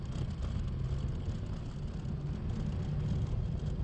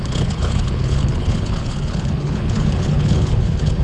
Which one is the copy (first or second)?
second